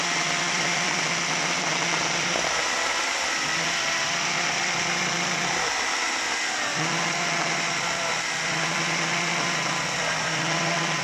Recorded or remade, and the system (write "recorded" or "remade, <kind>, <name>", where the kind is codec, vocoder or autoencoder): remade, vocoder, BigVGAN v2